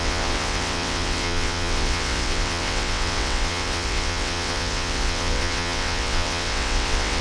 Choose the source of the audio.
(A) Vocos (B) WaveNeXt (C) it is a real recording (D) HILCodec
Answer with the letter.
B